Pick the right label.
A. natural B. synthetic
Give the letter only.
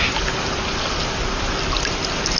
A